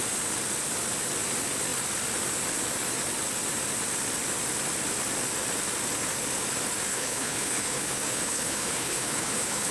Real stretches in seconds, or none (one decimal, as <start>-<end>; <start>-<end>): 0.0-6.9